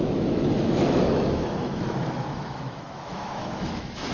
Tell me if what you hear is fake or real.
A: fake